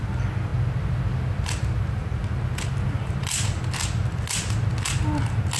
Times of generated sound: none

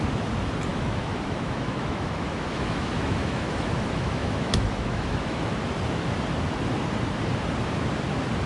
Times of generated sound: 0.7-5.5 (autoencoder, DAC-VAE)

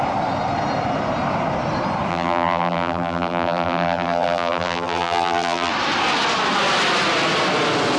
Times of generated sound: 2.1-5.7 (vocoder, BigVGAN v2)

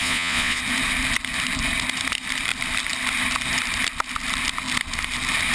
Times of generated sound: 0.0-0.6 (vocoder, Vocos)

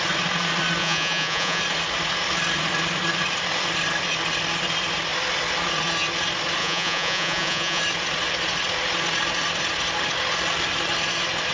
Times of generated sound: 0.8-1.6 (vocoder, Vocos); 6.6-7.8

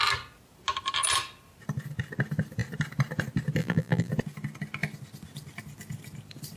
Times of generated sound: 3.6-4.1 (vocoder, BigVGAN v2)

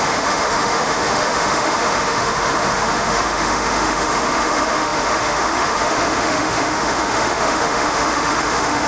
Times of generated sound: 0.0-8.9 (autoencoder, DAC-VAE)